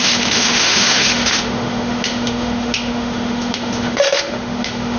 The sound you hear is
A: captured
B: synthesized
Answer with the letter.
B